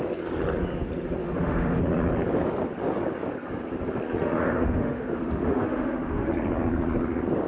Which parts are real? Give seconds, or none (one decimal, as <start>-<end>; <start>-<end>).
0.0-1.2; 1.8-4.2; 6.3-7.5